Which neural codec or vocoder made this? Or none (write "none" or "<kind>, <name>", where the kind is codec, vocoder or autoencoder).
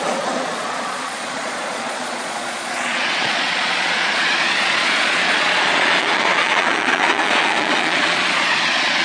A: vocoder, Vocos